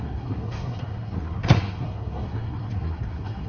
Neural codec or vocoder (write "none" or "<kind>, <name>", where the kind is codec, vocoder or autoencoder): codec, SNAC